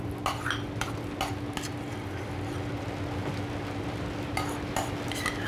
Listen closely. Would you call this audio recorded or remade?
recorded